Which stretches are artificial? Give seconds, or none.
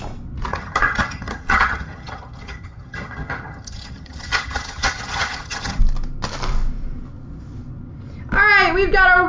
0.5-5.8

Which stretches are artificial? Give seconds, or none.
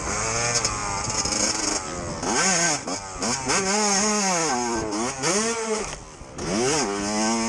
none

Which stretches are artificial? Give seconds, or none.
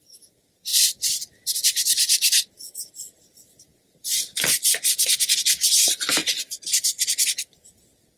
6.2-6.8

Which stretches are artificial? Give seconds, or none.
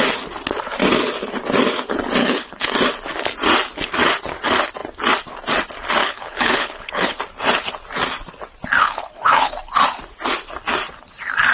2.2-2.7; 6.0-7.2; 8.8-9.5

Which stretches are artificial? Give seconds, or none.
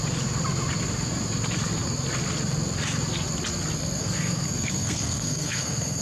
4.0-6.0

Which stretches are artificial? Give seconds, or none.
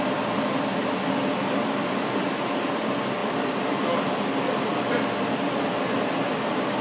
none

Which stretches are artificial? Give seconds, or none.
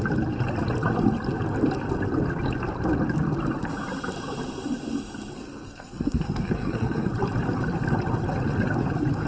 5.4-7.1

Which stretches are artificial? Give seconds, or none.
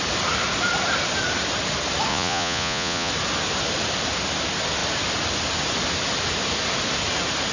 2.1-3.1